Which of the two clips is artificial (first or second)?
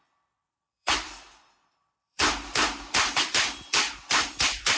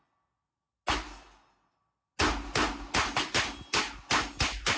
first